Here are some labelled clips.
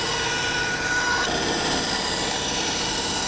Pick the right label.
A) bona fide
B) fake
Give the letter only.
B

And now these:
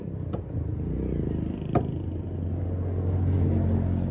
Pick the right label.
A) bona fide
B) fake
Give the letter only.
A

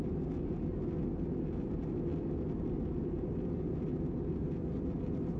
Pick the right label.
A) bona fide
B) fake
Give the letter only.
A